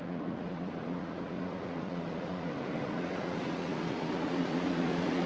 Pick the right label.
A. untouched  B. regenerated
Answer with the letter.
B